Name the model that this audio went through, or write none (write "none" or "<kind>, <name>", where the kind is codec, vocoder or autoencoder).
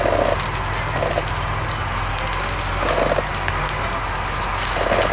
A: none